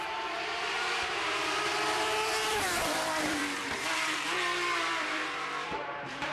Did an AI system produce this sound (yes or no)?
yes